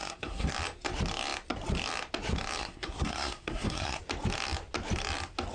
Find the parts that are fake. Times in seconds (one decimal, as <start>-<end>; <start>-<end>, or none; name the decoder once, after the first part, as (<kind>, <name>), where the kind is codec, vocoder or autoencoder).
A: 0.0-0.5 (codec, SNAC); 2.6-4.0